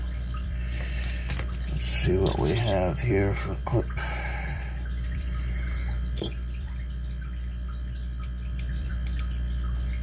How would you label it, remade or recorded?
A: remade